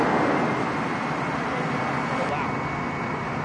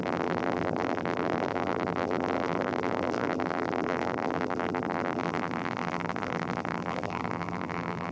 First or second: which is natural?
first